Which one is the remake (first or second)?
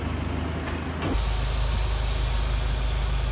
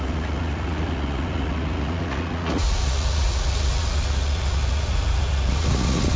second